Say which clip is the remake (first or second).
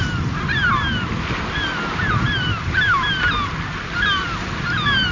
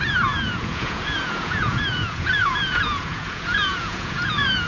second